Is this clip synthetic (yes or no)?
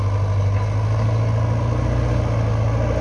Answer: no